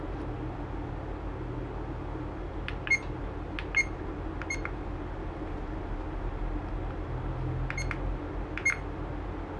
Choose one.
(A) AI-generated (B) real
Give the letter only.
B